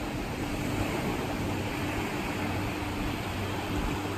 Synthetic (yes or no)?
no